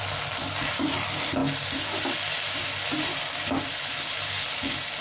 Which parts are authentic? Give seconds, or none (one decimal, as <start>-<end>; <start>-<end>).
0.0-5.0